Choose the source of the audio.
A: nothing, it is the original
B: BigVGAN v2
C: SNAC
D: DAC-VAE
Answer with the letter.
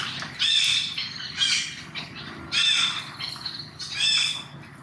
A